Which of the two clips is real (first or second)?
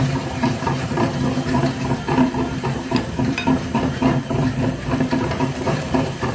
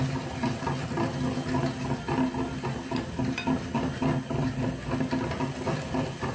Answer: second